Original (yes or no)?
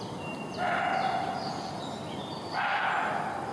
yes